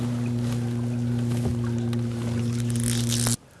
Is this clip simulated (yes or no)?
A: no